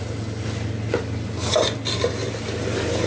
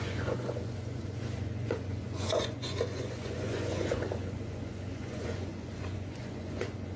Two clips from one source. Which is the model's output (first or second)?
second